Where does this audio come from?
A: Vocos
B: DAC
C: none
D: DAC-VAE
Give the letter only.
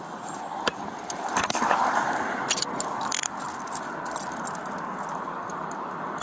C